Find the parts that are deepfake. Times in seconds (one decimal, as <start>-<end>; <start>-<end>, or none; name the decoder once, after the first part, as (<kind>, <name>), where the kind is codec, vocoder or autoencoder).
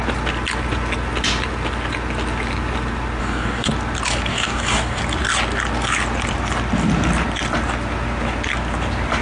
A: 3.2-3.7 (codec, DAC); 4.3-5.0